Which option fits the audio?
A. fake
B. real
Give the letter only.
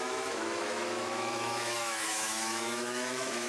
A